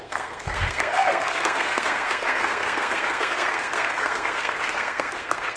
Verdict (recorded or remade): remade